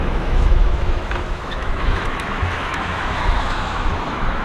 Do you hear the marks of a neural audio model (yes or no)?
yes